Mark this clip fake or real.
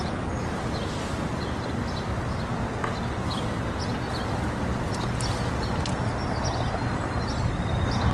real